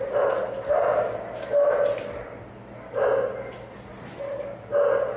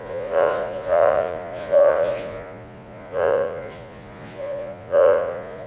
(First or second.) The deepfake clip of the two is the second